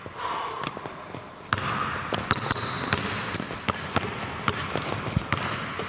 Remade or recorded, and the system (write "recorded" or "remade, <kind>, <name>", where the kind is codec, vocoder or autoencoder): recorded